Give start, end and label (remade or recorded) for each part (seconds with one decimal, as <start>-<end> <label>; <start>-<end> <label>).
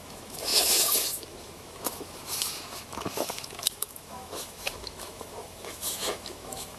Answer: 0.0-6.8 remade